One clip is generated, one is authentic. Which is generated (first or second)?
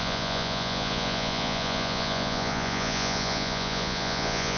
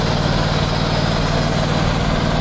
first